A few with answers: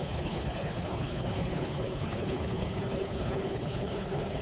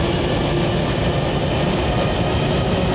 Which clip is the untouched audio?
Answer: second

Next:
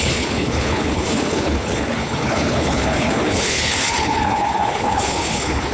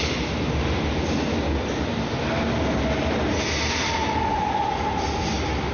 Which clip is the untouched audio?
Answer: second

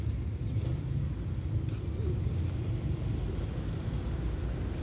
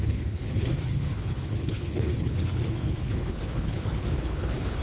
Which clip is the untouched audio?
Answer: first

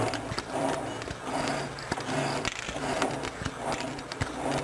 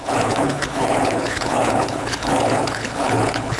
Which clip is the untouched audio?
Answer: first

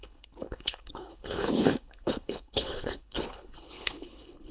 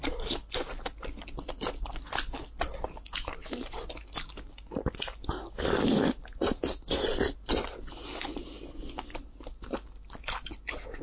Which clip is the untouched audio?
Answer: second